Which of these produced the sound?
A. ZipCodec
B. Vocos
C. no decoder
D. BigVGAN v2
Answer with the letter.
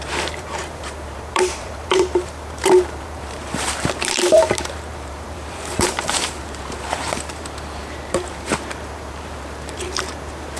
D